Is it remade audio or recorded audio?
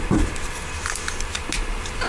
recorded